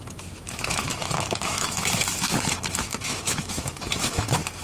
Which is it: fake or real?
fake